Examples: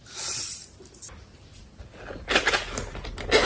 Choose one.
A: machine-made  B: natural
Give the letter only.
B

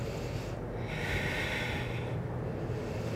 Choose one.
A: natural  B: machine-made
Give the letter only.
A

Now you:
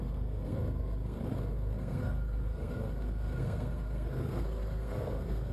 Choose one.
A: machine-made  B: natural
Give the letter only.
A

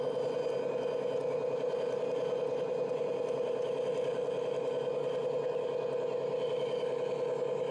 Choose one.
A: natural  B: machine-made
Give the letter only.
A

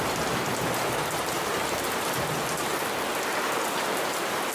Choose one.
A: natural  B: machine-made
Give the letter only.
A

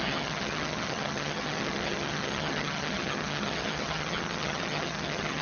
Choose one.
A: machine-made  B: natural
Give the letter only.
A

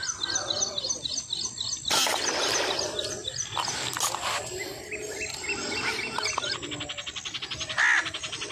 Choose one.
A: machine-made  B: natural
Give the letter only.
B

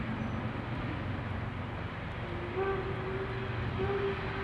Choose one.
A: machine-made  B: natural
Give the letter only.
B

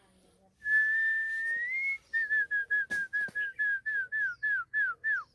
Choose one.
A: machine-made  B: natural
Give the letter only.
B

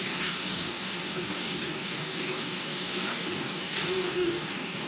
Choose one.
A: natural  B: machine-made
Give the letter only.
B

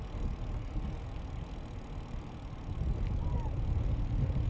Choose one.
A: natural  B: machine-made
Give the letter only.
A